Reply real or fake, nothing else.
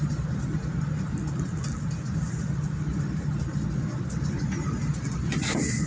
real